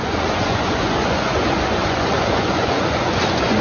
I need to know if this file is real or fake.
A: fake